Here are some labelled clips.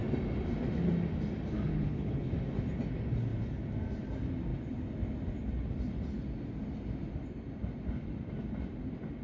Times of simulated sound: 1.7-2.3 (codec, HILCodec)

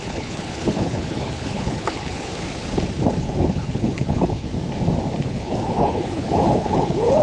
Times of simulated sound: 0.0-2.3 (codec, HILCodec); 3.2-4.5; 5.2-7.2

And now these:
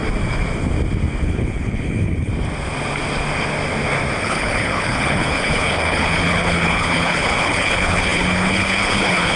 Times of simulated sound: 1.2-2.3 (codec, HILCodec); 4.2-9.4

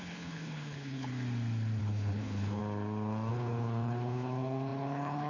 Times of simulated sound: 0.0-1.1 (codec, HILCodec); 1.8-2.6; 3.3-5.3

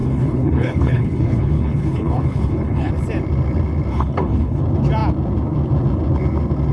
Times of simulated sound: 0.0-2.9 (codec, HILCodec); 3.9-4.6

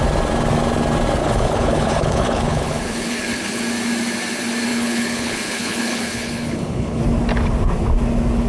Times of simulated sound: 1.2-3.6 (codec, HILCodec); 4.7-7.0

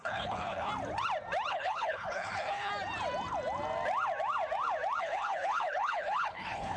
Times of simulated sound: 0.0-0.7 (codec, HILCodec); 1.5-2.7; 5.0-6.8